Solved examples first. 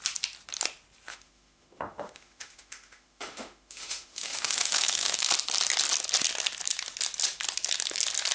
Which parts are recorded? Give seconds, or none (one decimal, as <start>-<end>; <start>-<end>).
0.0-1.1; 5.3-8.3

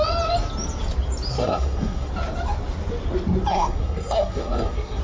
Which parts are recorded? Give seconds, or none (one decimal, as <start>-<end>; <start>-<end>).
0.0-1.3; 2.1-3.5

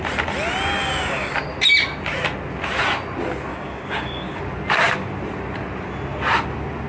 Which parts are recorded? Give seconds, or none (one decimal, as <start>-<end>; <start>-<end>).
0.0-0.8; 1.3-3.5; 4.4-6.9

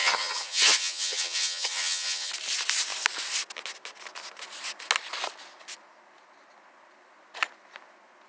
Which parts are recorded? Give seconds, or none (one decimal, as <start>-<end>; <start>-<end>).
2.3-8.3

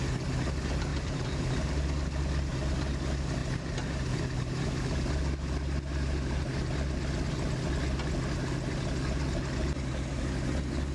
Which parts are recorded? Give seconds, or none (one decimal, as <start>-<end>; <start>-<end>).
0.0-0.9; 1.8-10.9

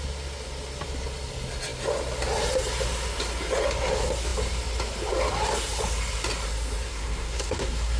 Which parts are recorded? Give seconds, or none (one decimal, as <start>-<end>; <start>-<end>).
0.0-6.9